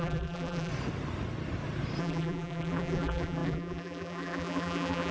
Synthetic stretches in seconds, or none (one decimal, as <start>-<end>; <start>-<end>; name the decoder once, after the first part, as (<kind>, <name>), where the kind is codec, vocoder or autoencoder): 0.0-0.7 (vocoder, BigVGAN v2); 2.0-5.1